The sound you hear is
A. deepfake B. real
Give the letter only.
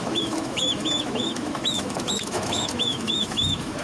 A